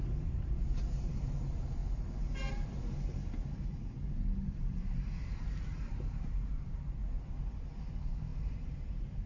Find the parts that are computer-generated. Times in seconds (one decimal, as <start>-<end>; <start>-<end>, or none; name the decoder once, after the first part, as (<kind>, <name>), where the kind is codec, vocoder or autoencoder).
0.0-1.8 (vocoder, BigVGAN v2); 4.1-7.0; 7.8-9.3